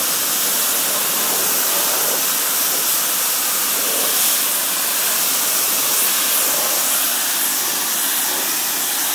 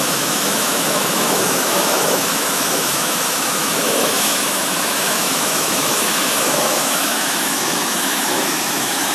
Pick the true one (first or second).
first